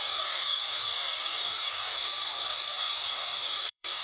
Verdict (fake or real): fake